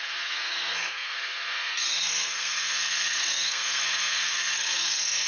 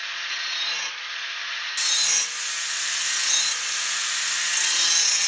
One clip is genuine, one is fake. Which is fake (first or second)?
first